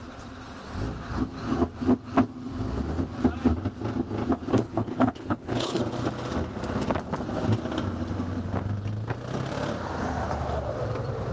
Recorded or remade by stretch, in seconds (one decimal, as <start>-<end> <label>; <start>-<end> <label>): 0.0-4.5 recorded; 4.5-5.8 remade; 5.8-11.3 recorded